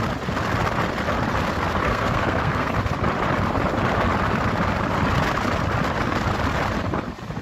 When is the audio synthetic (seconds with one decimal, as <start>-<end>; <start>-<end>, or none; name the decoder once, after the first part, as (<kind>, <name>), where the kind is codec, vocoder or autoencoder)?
1.8-2.7 (codec, SNAC)